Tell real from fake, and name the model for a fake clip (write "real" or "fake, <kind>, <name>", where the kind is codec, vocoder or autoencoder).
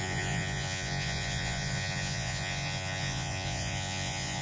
fake, vocoder, Vocos